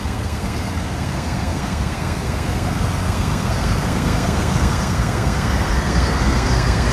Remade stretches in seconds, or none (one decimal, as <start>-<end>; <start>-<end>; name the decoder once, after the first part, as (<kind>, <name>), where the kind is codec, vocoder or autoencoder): 0.0-6.9 (codec, SNAC)